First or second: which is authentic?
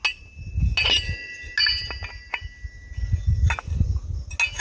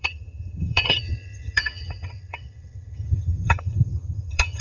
first